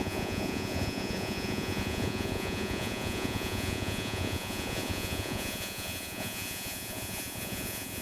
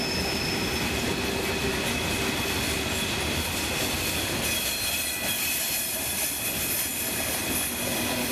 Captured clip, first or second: second